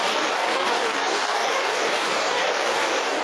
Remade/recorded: remade